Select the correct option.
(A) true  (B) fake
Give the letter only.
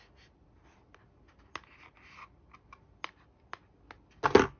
A